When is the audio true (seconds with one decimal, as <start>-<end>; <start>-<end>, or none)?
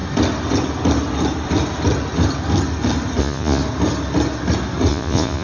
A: 0.0-3.2; 3.6-4.9